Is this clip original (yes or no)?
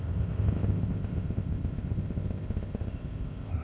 no